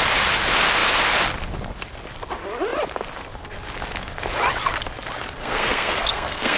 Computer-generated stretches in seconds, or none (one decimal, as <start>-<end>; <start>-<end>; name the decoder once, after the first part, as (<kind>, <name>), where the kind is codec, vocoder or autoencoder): 5.4-6.6 (codec, SNAC)